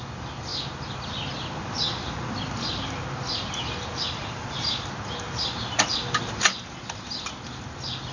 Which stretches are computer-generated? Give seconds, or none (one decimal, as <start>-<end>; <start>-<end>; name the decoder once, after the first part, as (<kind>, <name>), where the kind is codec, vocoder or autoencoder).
none